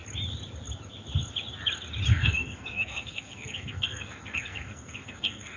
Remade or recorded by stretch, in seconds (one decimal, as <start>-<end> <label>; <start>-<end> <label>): 0.0-2.1 recorded; 2.1-5.6 remade